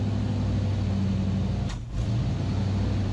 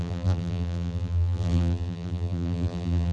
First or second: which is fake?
second